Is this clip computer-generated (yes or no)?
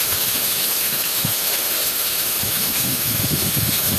yes